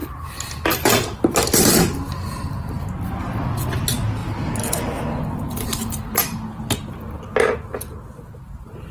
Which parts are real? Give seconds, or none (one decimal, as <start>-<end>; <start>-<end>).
0.0-8.9